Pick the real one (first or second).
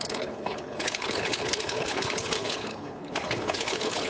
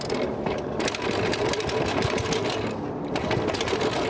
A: second